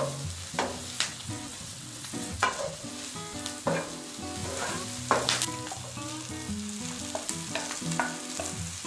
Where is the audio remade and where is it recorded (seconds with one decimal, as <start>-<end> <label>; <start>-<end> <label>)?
0.0-1.1 recorded; 1.1-2.9 remade; 2.9-8.9 recorded